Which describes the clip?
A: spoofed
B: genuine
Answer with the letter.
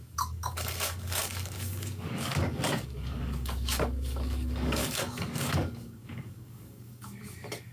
A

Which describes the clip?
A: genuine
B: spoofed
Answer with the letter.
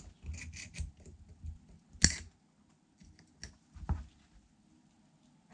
A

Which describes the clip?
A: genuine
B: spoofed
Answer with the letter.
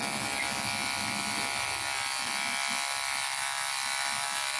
A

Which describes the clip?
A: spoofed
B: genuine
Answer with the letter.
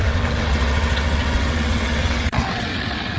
A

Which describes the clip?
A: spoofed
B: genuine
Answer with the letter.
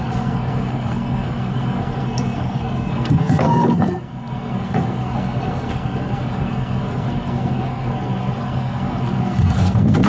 A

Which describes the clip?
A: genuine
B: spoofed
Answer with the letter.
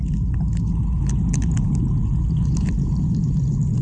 A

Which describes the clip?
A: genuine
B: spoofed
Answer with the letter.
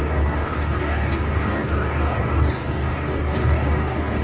B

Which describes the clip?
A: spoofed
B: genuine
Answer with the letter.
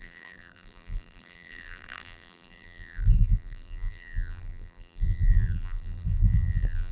A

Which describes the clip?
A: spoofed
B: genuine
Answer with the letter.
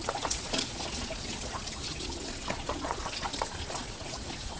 A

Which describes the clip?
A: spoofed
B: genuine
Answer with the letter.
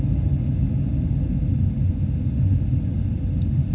B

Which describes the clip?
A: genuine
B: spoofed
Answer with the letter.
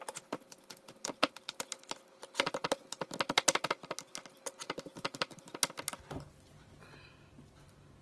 A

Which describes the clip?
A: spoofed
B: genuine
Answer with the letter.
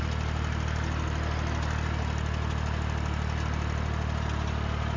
B